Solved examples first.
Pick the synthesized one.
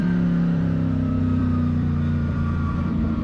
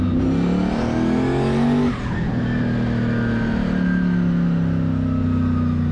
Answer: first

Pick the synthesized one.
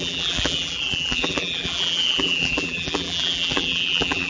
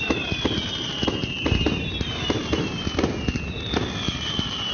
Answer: first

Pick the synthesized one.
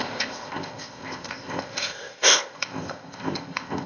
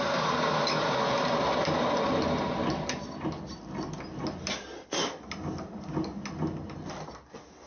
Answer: first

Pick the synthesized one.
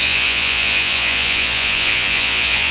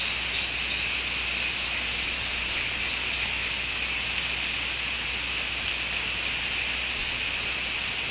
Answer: first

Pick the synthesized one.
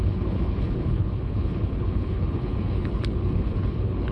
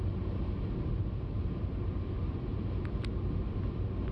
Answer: first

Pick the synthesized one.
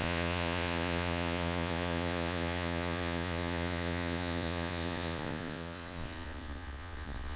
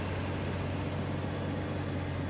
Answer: first